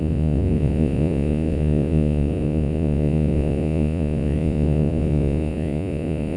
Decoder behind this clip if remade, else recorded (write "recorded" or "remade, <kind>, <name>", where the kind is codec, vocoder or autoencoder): remade, vocoder, Vocos